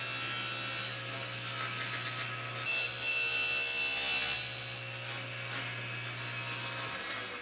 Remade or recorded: recorded